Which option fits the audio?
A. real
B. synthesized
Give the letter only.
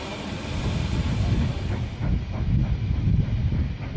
A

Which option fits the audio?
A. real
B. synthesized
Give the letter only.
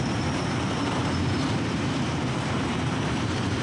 B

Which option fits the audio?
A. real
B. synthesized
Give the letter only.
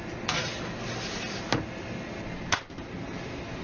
A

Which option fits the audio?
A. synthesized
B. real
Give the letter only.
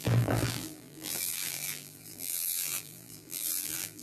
A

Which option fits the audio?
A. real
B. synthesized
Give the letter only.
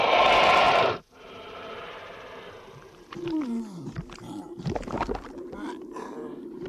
B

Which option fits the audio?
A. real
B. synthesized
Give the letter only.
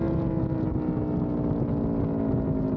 A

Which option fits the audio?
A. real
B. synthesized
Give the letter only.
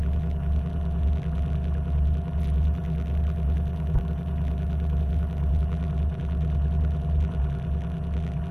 B